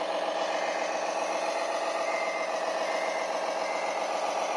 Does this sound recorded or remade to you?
recorded